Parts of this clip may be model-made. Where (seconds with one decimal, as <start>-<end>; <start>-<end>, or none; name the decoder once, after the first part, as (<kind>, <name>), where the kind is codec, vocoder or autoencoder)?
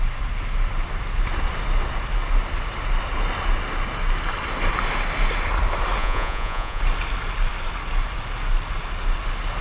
6.0-6.8 (vocoder, Vocos)